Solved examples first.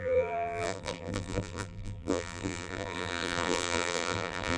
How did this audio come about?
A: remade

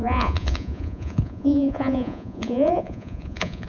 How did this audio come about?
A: remade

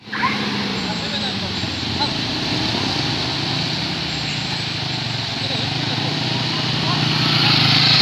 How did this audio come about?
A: recorded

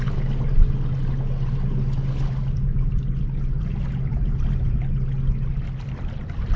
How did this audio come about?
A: recorded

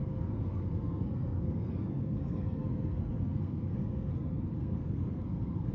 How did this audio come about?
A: remade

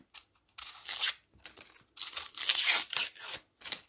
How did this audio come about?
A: recorded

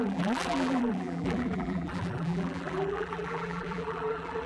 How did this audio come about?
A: remade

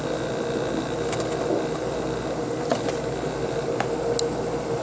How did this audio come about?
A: recorded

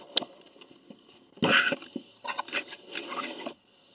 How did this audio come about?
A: recorded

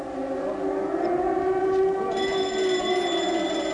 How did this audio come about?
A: recorded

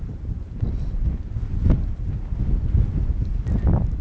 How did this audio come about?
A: recorded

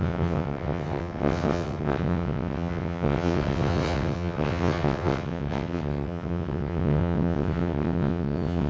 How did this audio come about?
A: remade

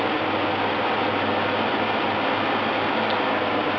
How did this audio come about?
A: recorded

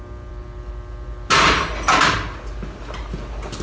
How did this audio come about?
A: recorded